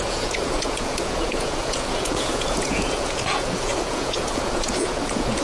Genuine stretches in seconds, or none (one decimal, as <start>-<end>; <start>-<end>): none